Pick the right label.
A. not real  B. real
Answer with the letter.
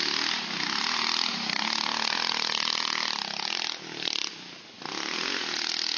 B